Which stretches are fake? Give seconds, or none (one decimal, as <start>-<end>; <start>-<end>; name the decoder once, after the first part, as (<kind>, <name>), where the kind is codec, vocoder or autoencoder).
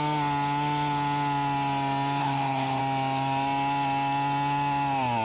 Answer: 2.2-2.8 (codec, HILCodec)